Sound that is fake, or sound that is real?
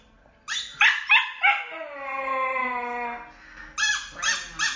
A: real